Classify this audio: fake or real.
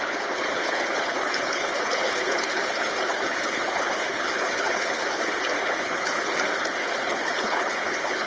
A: fake